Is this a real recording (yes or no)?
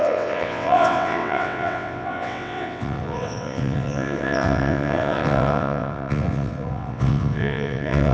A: no